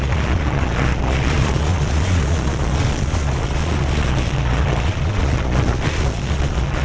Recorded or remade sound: remade